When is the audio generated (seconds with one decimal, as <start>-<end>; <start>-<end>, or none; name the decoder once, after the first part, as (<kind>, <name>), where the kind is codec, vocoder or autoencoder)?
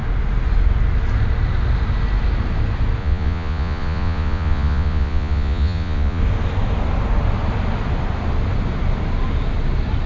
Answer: 3.0-6.2 (vocoder, Vocos)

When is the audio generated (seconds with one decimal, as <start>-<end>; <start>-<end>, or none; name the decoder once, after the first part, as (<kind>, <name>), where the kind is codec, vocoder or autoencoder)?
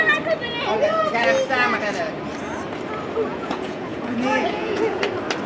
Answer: 3.3-5.0 (vocoder, Vocos)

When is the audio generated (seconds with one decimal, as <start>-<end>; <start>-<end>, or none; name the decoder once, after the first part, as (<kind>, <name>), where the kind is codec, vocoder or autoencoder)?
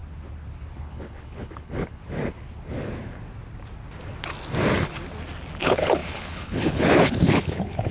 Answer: 0.8-2.0 (codec, HILCodec); 5.6-7.9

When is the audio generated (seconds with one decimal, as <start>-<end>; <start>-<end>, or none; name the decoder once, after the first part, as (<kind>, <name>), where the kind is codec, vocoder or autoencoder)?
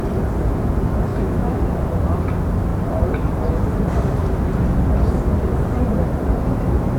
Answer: 1.1-1.6 (autoencoder, DAC-VAE)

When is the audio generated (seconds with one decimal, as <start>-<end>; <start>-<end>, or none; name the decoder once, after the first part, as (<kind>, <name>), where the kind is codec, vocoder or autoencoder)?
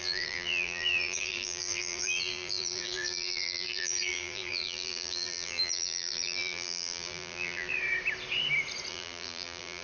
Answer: 0.0-7.7 (vocoder, BigVGAN v2); 8.9-9.8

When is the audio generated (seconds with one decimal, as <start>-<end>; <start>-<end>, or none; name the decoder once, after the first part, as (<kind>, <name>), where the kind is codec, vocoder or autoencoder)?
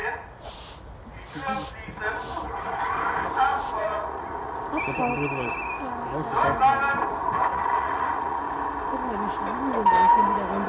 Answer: 0.0-0.6 (vocoder, Vocos); 3.5-4.6; 7.5-8.4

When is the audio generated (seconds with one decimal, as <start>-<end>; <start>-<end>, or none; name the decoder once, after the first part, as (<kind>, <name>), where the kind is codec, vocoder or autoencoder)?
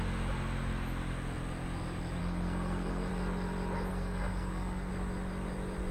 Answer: 2.2-3.1 (codec, SNAC); 3.9-4.9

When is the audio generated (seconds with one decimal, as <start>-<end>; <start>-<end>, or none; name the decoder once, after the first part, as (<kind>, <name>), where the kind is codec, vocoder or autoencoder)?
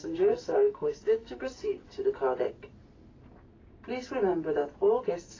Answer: 0.0-1.8 (codec, SNAC); 5.0-5.4